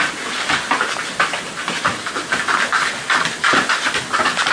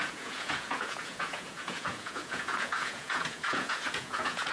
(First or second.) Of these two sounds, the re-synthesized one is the second